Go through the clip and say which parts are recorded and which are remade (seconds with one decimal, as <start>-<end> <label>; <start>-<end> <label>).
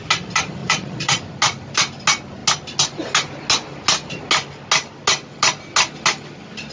0.0-0.6 recorded; 0.6-1.2 remade; 1.2-6.7 recorded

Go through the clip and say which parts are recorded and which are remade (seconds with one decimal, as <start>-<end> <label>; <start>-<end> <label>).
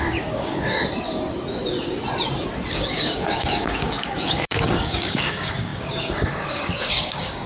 0.0-0.8 remade; 0.8-2.7 recorded; 2.7-7.5 remade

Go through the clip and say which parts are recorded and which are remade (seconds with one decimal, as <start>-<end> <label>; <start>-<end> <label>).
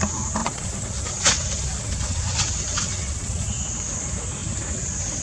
0.0-0.4 recorded; 0.4-3.5 remade; 3.5-5.2 recorded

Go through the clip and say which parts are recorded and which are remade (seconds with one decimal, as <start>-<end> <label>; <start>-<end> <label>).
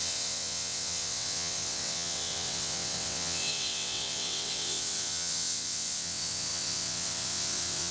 0.0-7.9 remade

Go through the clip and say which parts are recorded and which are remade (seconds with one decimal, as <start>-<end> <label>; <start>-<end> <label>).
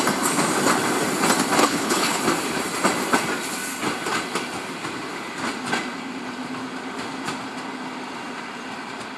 0.0-1.6 recorded; 1.6-2.2 remade; 2.2-9.2 recorded